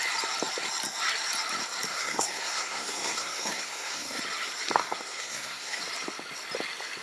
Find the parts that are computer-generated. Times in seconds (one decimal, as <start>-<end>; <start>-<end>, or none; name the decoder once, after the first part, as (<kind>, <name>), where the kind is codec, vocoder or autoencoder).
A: 1.9-4.2 (codec, SNAC); 4.8-5.8